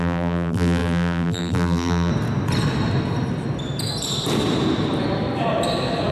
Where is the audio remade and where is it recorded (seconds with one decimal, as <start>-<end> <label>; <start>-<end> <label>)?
0.0-2.1 remade; 2.1-6.1 recorded